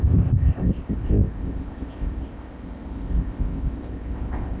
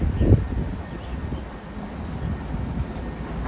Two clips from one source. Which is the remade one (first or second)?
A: first